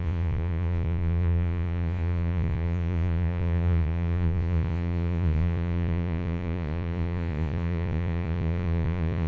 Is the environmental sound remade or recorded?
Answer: remade